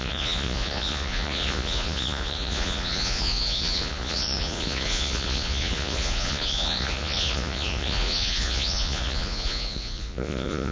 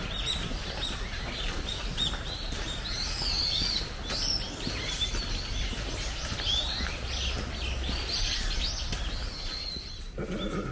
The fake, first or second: first